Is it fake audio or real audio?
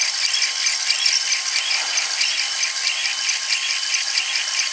real